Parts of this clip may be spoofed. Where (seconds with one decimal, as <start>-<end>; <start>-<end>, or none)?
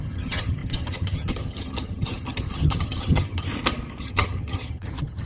0.0-3.5; 4.0-5.3